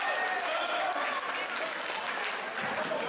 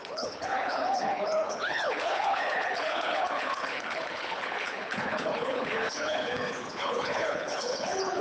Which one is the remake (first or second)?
second